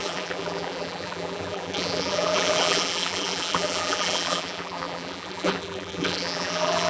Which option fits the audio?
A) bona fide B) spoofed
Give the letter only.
B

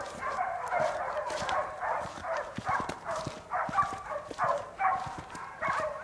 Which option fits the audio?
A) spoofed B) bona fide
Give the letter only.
A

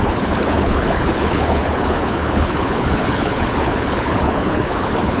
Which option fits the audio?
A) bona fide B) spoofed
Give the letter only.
B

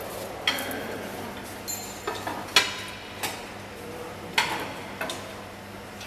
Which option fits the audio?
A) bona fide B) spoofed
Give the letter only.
A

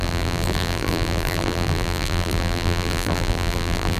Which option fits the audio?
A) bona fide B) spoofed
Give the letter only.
B